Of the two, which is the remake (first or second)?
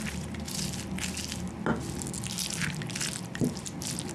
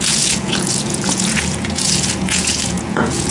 second